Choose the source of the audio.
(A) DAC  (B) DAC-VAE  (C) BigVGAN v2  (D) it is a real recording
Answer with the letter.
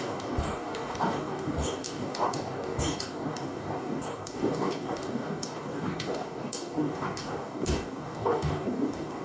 A